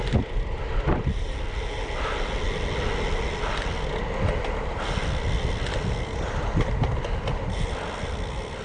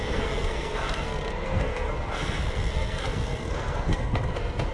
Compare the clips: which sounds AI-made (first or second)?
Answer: second